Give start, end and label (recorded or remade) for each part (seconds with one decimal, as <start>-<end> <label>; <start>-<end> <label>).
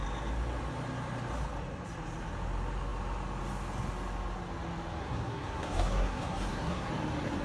0.0-5.0 recorded; 5.0-6.9 remade; 6.9-7.4 recorded